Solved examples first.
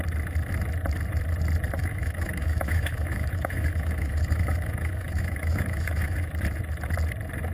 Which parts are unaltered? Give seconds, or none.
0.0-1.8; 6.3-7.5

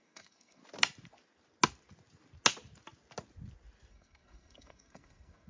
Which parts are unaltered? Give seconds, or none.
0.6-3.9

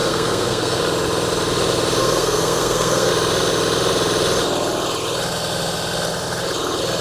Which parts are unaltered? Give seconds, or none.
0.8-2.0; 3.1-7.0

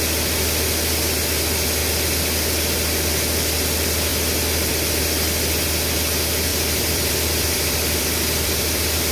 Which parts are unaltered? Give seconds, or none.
0.0-6.5

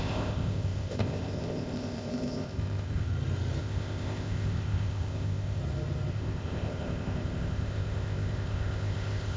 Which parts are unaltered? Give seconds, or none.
3.1-3.6; 5.6-6.1